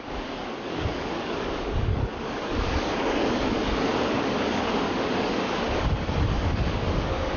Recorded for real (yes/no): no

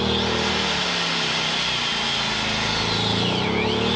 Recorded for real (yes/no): yes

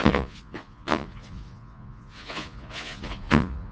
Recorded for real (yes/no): no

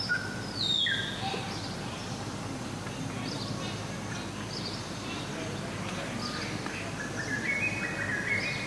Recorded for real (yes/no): yes